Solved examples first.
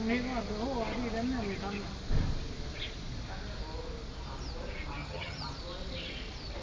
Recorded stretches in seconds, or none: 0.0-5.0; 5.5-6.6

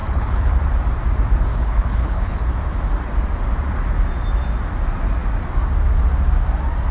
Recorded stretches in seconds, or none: 0.5-1.5; 2.5-6.9

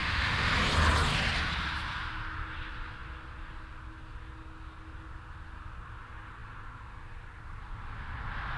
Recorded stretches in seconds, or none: 0.5-8.6

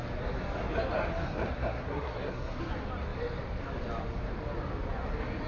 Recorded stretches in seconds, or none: 0.0-1.1; 2.6-5.5

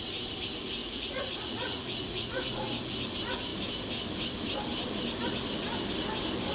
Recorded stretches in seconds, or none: 0.0-0.8; 2.8-6.5

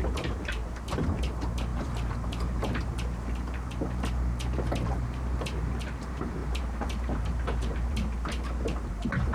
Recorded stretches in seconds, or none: none